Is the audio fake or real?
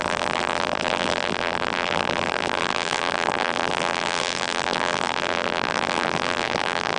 fake